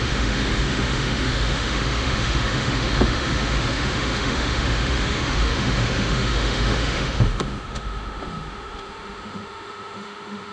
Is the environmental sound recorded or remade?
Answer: remade